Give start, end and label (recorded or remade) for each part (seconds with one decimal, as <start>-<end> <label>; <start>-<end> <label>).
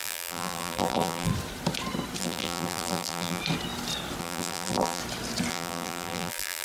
0.0-1.3 remade; 1.3-2.2 recorded; 2.2-3.4 remade; 3.4-4.2 recorded; 4.2-5.0 remade; 5.0-5.5 recorded; 5.5-6.6 remade